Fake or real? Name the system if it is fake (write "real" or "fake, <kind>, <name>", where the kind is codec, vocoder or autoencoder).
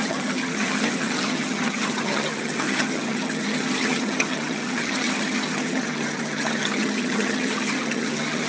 fake, vocoder, HiFi-GAN